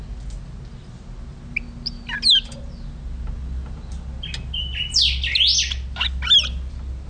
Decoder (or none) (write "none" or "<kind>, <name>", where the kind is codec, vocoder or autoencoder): none